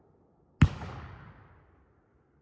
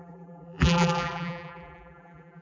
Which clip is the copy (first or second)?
second